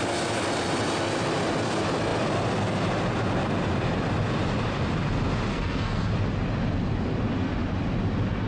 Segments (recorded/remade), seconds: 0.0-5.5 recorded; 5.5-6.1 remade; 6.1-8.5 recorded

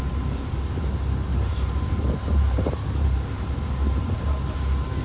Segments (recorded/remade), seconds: 0.0-1.3 recorded; 1.3-4.3 remade; 4.3-5.0 recorded

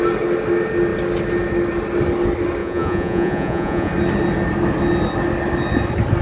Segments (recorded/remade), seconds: 0.0-2.6 recorded; 2.6-3.9 remade; 3.9-6.2 recorded

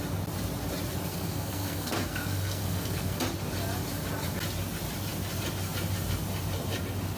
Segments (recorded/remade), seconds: 0.0-1.1 recorded; 1.1-3.2 remade; 3.2-7.2 recorded